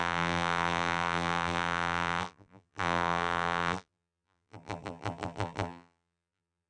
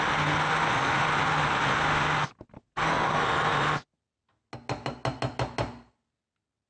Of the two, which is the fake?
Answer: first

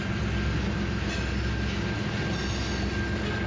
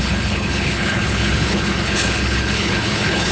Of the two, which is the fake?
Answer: second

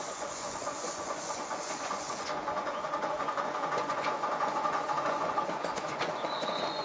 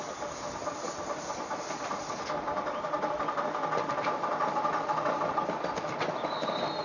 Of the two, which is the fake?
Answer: first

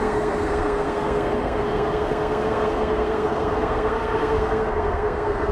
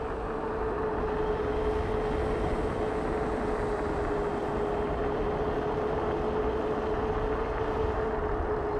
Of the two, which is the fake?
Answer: first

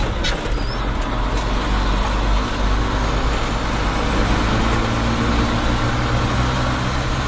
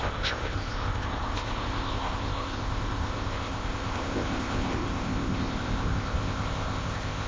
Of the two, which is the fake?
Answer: second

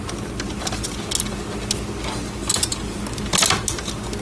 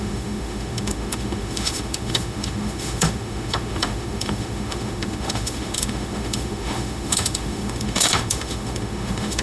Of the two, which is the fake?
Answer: second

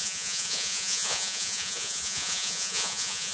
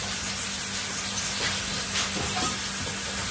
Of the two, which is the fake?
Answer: first